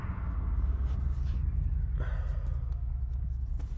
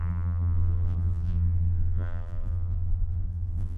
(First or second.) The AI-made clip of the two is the second